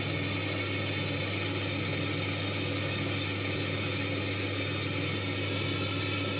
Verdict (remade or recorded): recorded